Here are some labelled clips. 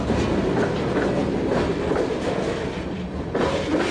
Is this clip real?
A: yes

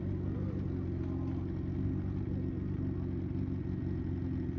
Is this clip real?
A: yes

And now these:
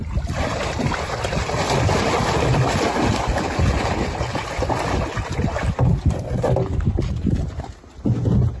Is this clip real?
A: yes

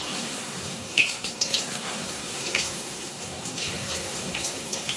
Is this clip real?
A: no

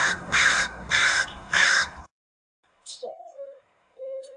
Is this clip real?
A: no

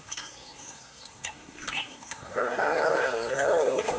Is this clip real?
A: no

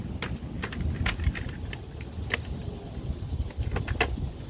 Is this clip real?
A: yes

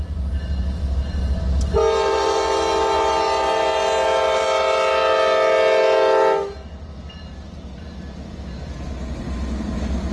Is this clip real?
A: yes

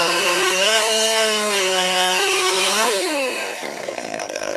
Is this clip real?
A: no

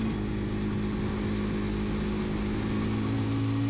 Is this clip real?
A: yes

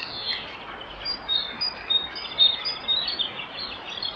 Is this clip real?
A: yes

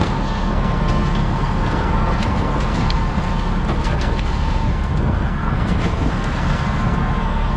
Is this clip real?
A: no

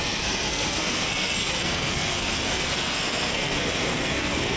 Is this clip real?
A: no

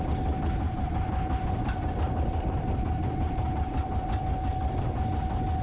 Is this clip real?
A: yes